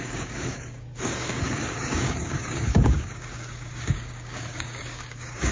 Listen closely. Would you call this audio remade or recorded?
remade